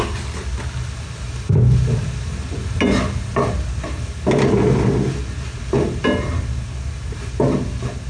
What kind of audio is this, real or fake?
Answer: real